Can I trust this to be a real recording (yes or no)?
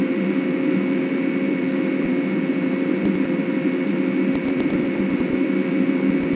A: no